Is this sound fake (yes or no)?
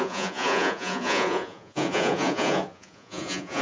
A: yes